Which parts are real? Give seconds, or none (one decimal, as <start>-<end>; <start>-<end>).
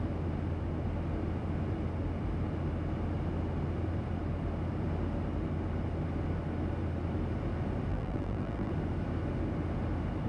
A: 0.0-7.9; 8.7-10.3